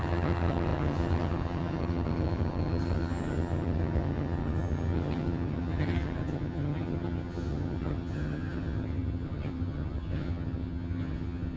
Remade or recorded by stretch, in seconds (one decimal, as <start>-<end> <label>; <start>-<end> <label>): 0.0-11.6 remade